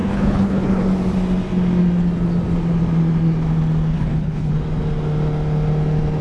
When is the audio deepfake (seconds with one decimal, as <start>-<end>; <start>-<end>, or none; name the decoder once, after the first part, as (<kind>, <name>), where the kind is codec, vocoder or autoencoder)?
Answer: 0.0-0.8 (codec, HILCodec); 3.9-4.5